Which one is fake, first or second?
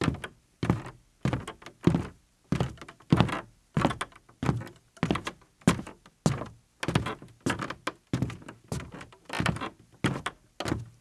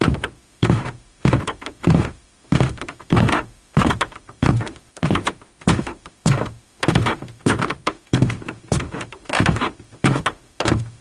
second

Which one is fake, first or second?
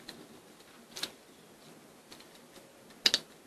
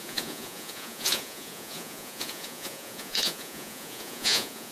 second